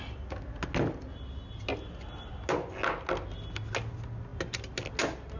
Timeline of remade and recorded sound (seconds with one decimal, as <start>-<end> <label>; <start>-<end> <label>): 0.0-5.4 recorded